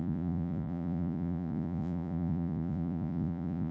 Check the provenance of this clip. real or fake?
fake